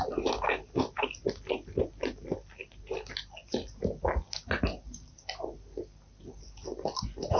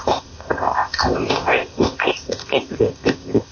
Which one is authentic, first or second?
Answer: first